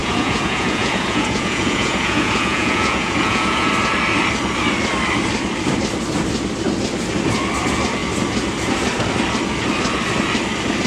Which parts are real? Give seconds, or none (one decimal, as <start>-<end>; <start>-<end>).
3.7-10.9